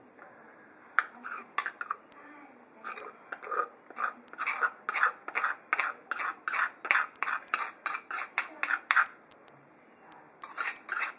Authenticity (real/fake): real